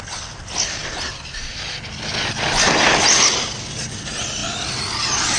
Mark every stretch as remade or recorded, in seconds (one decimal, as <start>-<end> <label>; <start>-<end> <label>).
0.0-5.4 recorded